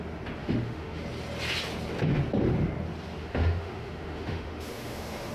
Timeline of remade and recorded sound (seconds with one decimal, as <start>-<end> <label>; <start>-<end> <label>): 0.0-0.4 recorded; 0.4-1.0 remade; 1.0-3.2 recorded; 3.2-5.3 remade